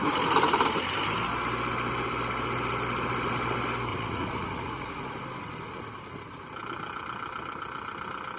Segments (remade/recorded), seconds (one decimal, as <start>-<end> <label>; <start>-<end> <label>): 0.0-3.9 recorded; 3.9-5.2 remade; 5.2-8.4 recorded